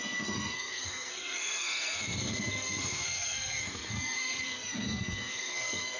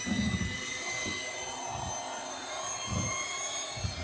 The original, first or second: second